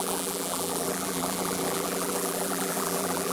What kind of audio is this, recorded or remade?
remade